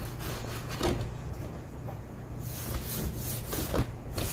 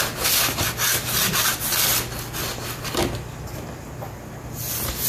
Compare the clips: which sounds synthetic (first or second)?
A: first